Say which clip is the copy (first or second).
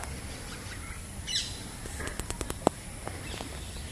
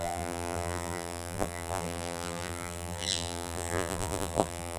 second